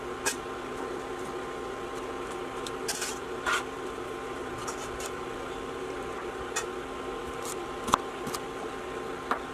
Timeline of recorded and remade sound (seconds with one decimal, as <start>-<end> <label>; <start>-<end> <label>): 0.0-2.4 recorded; 2.4-6.2 remade; 6.2-7.2 recorded; 7.2-8.7 remade; 8.7-9.5 recorded